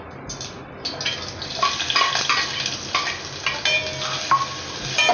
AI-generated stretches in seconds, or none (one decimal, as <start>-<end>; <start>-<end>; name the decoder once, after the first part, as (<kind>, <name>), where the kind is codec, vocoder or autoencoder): none